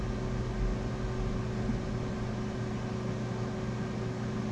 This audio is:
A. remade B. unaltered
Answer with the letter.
B